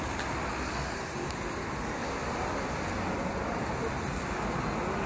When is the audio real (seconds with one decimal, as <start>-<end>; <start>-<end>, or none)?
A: 0.0-5.1